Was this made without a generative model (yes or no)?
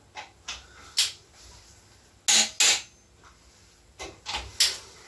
yes